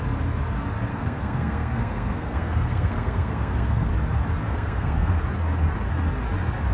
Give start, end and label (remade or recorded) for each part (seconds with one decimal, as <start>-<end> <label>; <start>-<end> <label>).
0.0-0.9 recorded; 0.9-3.9 remade; 3.9-4.5 recorded; 4.5-5.2 remade; 5.2-6.7 recorded